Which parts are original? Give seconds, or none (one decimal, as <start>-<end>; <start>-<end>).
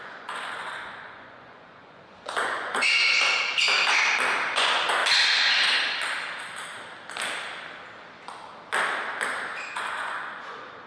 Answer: 3.0-4.4; 5.0-9.7